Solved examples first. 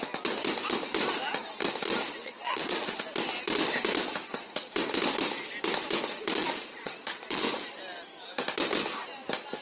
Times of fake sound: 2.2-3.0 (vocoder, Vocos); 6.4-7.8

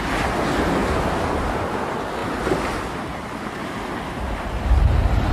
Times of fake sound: 0.8-1.8 (vocoder, BigVGAN v2)

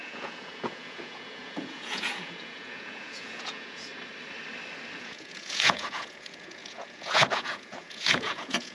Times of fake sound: 0.0-3.9 (vocoder, Vocos); 5.0-8.7

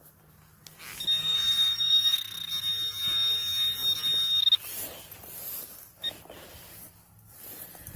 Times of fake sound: 1.2-2.5 (codec, SNAC)

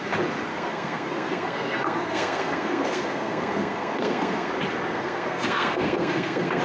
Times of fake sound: 0.5-4.5 (codec, SNAC); 4.9-6.6

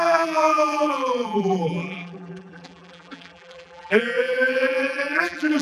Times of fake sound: 0.0-5.6 (vocoder, BigVGAN v2)

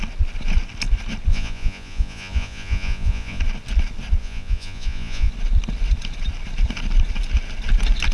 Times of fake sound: 1.3-3.4 (vocoder, Vocos); 4.2-5.3